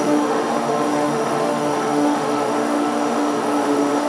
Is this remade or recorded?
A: remade